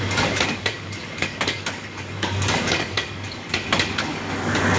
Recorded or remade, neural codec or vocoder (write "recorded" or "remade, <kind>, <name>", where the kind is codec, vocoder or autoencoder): remade, codec, DAC